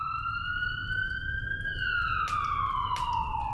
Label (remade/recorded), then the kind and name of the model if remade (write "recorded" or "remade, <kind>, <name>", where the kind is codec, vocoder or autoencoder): recorded